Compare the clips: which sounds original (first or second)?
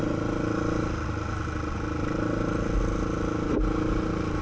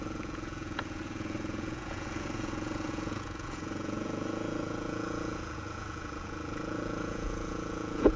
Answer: first